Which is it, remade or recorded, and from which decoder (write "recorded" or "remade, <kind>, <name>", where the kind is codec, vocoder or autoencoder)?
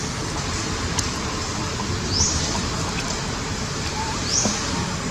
remade, vocoder, BigVGAN v2